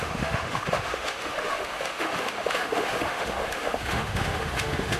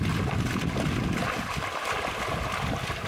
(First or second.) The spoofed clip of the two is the first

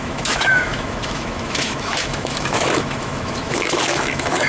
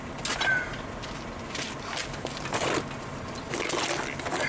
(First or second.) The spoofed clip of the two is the first